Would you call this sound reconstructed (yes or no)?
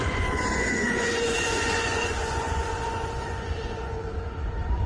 yes